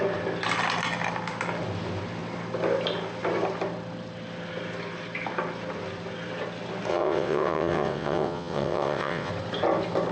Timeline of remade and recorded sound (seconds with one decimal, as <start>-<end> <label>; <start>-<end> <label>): 0.0-6.9 recorded; 6.9-9.3 remade; 9.3-10.1 recorded